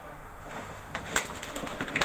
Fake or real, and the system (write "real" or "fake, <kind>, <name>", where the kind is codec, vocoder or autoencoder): fake, autoencoder, DAC-VAE